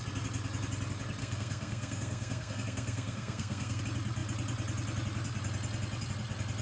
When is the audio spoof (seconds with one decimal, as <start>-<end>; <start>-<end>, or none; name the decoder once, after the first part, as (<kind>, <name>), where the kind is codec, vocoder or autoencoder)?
1.2-3.8 (codec, SNAC)